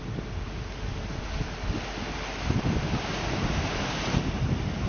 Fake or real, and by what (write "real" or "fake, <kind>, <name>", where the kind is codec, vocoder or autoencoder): real